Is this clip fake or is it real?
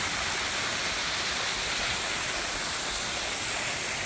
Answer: real